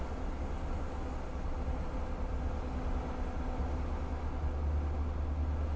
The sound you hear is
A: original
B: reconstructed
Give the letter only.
A